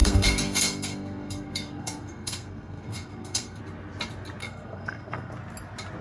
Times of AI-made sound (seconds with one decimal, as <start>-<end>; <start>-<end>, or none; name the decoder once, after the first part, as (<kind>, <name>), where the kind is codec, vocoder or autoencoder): 0.0-3.6 (codec, SNAC); 4.4-5.3